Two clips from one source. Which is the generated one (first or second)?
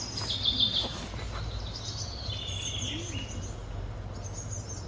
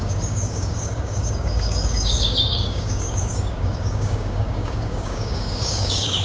second